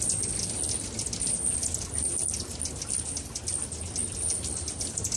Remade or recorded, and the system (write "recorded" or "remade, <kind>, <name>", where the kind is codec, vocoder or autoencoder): recorded